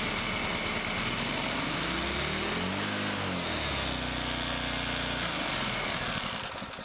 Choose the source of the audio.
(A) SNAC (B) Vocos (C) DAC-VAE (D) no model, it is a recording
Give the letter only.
D